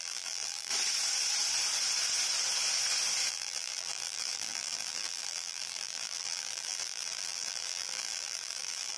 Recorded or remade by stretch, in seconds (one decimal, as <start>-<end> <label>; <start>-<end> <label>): 0.0-0.7 remade; 0.7-3.3 recorded; 3.3-9.0 remade